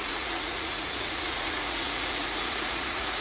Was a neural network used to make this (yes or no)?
yes